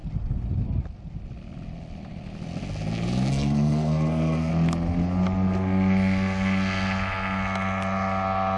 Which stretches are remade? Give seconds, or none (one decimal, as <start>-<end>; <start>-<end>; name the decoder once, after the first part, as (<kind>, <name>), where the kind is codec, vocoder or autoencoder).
3.3-4.5 (codec, SNAC)